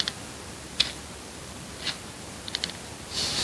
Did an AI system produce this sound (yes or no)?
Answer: no